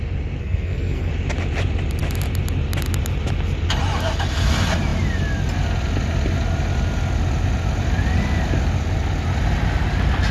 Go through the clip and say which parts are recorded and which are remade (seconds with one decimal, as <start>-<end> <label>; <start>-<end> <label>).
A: 0.0-0.4 recorded; 0.4-1.1 remade; 1.1-10.3 recorded